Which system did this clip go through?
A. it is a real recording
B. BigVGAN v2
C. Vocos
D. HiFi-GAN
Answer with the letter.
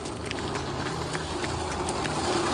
A